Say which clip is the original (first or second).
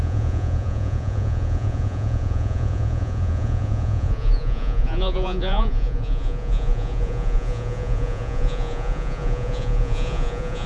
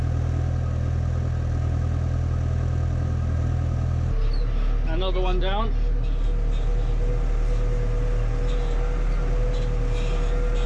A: second